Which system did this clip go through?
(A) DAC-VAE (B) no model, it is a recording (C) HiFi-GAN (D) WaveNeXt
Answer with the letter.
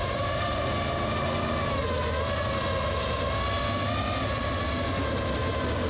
B